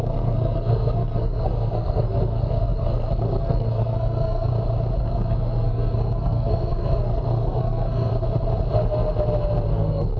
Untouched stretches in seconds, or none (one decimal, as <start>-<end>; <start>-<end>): 4.5-5.0; 8.1-9.7